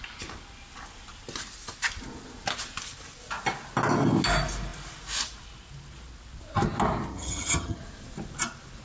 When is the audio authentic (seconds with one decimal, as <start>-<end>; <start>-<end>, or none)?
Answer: 0.0-7.1; 7.8-8.8